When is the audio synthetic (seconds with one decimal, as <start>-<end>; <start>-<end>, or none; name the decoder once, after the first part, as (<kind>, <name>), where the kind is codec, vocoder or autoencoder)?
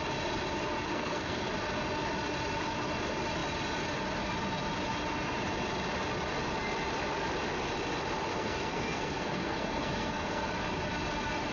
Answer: 0.9-1.5 (codec, SNAC); 8.3-10.5